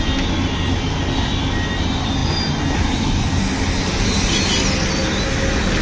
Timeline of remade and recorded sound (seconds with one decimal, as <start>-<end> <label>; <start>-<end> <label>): 0.0-5.8 recorded